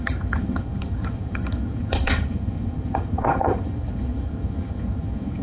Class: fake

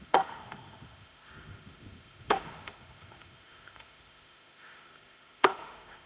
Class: fake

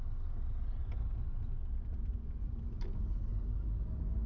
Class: real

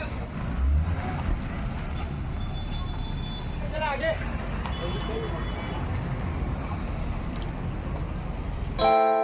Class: real